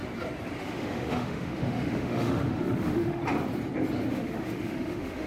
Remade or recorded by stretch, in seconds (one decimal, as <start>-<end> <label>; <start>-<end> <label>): 0.0-0.6 recorded; 0.6-3.2 remade; 3.2-4.1 recorded; 4.1-5.3 remade